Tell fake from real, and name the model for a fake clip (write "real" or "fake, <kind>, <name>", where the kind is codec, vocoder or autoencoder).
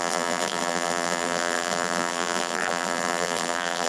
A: fake, vocoder, BigVGAN v2